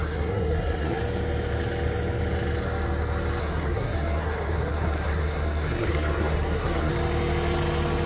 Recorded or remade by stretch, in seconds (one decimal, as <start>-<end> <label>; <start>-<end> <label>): 0.0-1.0 remade; 1.0-3.4 recorded; 3.4-6.9 remade; 6.9-8.1 recorded